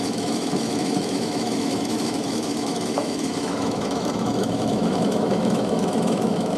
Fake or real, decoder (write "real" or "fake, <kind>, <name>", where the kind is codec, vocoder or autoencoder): fake, autoencoder, DAC-VAE